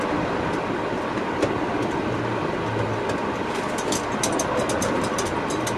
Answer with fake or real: real